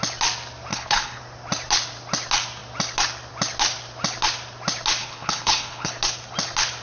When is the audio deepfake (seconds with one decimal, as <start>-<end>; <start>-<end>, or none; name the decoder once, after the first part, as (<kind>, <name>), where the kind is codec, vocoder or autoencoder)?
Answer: 0.7-1.2 (codec, HILCodec); 5.0-5.9